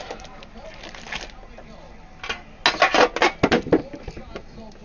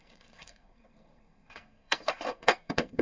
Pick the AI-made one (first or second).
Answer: second